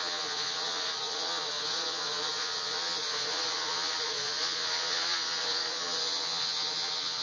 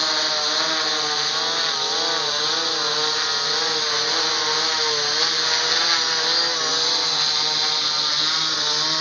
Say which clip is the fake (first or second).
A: first